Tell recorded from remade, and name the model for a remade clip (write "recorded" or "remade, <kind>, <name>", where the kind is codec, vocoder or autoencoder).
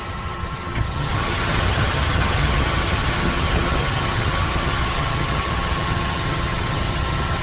remade, vocoder, HiFi-GAN